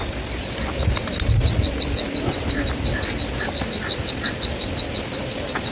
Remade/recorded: recorded